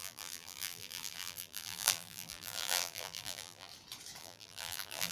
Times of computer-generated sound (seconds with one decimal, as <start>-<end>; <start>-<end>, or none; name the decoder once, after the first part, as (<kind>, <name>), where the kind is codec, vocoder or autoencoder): 0.0-3.7 (vocoder, BigVGAN v2); 4.2-5.1

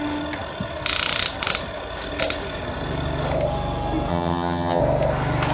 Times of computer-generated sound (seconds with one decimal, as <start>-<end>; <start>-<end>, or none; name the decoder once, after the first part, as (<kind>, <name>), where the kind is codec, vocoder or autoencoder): 4.1-4.8 (vocoder, HiFi-GAN)

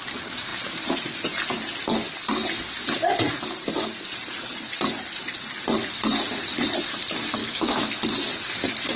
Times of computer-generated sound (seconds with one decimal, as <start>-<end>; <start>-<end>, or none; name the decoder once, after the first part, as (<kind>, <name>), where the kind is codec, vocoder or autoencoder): 7.4-8.0 (autoencoder, DAC-VAE)

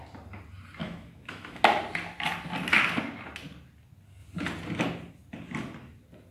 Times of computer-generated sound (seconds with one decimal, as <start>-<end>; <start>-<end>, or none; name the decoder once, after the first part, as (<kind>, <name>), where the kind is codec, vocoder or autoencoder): 0.8-1.6 (autoencoder, DAC-VAE)

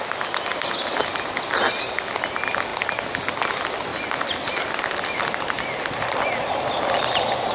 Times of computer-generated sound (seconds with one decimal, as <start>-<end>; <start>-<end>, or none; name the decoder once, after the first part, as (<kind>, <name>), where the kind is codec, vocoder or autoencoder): none